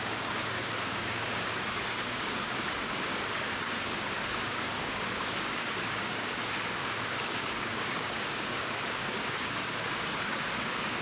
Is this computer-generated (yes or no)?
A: yes